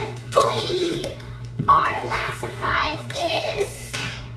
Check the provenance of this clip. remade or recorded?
remade